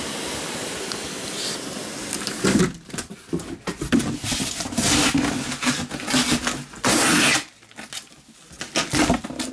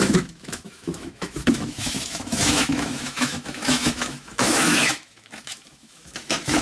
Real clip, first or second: first